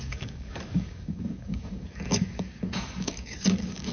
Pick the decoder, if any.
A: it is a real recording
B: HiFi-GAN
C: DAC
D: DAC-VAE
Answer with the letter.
C